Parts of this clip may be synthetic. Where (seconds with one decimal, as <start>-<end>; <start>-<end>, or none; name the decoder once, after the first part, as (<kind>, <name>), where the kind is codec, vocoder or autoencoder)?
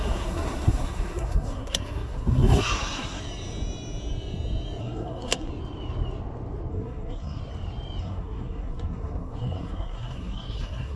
0.0-3.2 (codec, SNAC); 4.8-5.5; 6.7-7.4; 8.0-11.0